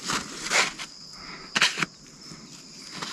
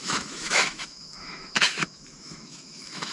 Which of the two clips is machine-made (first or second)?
second